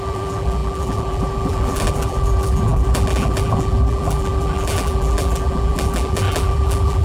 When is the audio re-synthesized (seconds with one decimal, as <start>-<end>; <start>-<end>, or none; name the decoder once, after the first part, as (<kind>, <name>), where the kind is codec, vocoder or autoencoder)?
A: 0.0-7.0 (vocoder, BigVGAN v2)